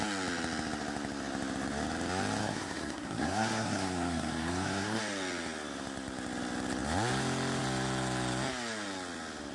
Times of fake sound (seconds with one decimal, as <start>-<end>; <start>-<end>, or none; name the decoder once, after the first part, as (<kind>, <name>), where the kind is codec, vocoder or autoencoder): 2.4-5.0 (codec, SNAC)